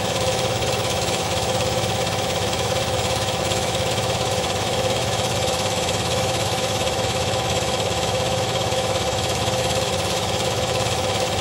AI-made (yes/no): yes